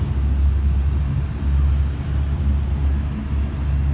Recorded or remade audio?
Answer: recorded